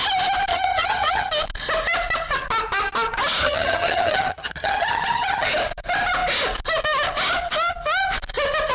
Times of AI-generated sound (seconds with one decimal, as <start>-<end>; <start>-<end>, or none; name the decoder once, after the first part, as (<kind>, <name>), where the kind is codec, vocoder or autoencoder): 0.5-1.3 (vocoder, HiFi-GAN); 3.4-5.5